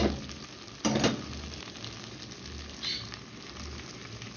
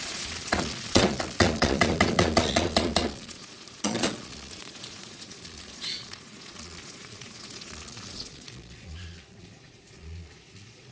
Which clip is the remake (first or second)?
second